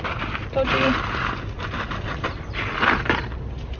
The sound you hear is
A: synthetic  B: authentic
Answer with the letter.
B